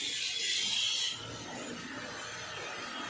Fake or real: real